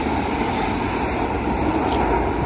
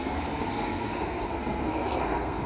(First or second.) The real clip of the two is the first